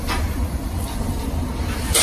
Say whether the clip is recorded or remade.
remade